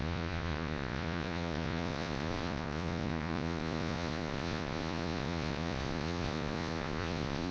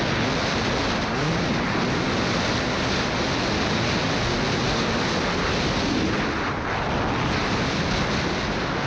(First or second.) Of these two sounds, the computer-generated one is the first